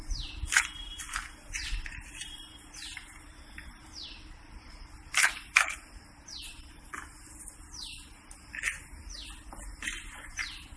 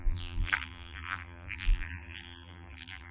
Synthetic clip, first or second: second